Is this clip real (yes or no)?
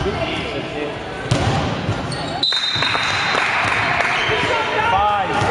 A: yes